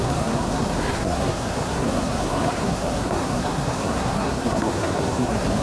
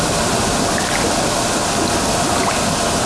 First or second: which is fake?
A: first